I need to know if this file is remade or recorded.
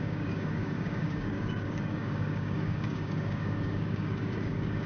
remade